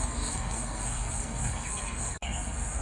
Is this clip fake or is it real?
fake